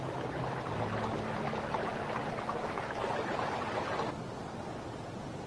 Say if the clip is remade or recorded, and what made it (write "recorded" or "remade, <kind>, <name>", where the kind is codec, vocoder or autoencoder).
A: recorded